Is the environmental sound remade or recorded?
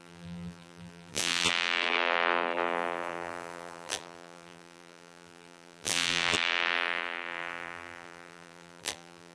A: remade